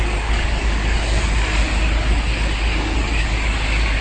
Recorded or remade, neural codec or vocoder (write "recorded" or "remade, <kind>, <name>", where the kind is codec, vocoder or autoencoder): remade, codec, DAC